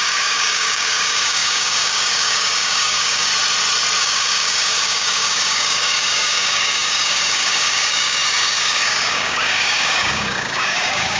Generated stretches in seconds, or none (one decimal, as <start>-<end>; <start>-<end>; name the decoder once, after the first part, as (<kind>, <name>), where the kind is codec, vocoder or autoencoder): 0.0-3.3 (codec, DAC); 4.0-11.2